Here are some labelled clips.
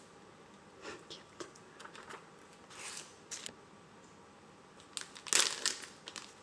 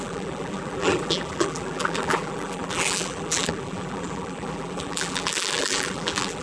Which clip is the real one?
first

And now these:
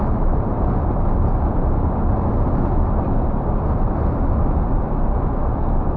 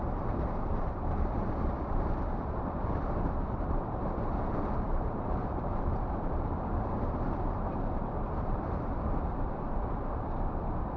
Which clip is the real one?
first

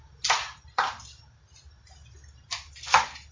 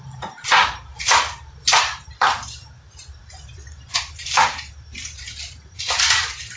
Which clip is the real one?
first